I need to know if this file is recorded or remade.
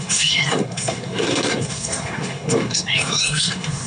remade